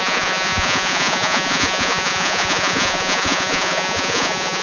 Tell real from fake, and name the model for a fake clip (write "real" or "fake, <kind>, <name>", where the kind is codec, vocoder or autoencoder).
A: fake, vocoder, Vocos